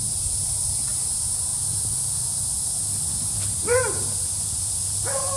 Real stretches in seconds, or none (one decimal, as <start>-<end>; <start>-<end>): 0.0-5.4